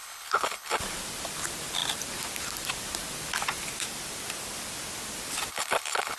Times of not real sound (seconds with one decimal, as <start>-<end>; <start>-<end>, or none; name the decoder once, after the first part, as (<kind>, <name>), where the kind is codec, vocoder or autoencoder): 0.0-0.8 (codec, HILCodec); 5.5-6.2

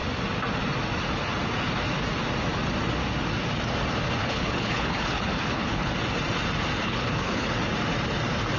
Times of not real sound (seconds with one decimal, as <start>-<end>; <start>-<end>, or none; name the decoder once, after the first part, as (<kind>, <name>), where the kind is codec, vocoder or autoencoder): 4.2-5.9 (codec, HILCodec); 6.8-7.5

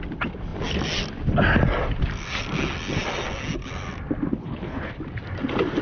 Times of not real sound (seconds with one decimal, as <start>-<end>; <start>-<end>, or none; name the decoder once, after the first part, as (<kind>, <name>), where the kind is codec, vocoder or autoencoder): 4.4-4.9 (codec, HILCodec)

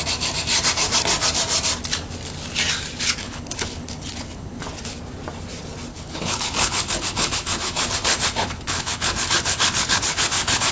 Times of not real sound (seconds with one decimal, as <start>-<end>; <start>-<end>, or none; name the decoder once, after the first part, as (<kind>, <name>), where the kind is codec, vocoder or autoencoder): 3.2-4.6 (codec, HILCodec); 5.9-10.7

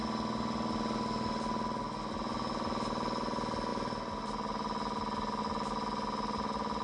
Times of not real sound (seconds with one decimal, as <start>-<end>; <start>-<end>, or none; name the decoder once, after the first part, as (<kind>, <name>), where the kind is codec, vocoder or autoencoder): none

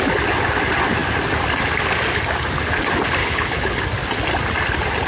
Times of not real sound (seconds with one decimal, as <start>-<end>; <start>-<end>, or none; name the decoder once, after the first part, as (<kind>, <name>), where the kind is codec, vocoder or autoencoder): 3.2-3.8 (codec, HILCodec)

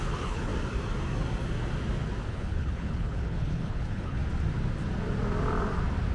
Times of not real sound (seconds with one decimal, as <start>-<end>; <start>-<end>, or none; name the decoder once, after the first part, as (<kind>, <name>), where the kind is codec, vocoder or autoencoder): 0.0-0.5 (codec, HILCodec); 2.3-4.2

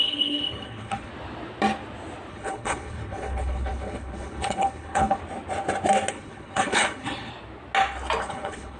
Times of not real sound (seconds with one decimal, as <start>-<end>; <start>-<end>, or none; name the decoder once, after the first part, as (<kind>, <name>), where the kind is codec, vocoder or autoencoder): 0.0-1.1 (codec, HILCodec); 2.3-5.2; 6.1-7.3; 8.2-8.8